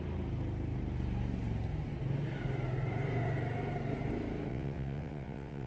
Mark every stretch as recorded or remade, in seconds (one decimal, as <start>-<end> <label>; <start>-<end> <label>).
0.0-4.5 recorded; 4.5-5.7 remade

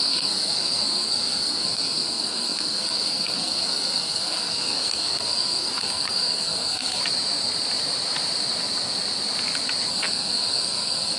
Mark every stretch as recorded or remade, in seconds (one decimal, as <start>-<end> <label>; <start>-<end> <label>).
0.0-7.0 remade; 7.0-9.9 recorded; 9.9-11.2 remade

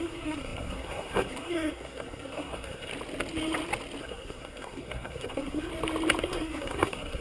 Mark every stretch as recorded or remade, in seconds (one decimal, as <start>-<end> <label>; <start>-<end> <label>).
0.0-2.9 remade; 2.9-4.0 recorded; 4.0-5.7 remade; 5.7-6.2 recorded; 6.2-7.2 remade

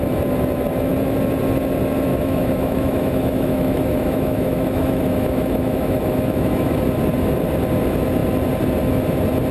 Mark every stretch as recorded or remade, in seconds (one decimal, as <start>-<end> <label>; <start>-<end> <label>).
0.0-2.1 recorded; 2.1-6.8 remade; 6.8-9.5 recorded

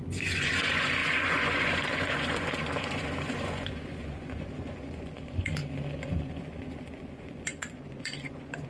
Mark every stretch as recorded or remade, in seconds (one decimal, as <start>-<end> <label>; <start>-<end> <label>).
0.0-5.6 remade; 5.6-6.4 recorded; 6.4-8.7 remade

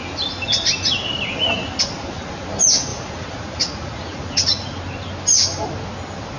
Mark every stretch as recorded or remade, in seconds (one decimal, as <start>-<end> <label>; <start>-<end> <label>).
0.0-2.9 recorded; 2.9-4.8 remade; 4.8-6.4 recorded